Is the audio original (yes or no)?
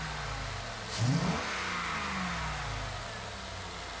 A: yes